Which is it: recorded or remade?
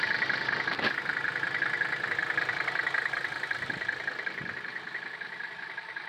recorded